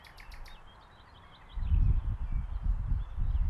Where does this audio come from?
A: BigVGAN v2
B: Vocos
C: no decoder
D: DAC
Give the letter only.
C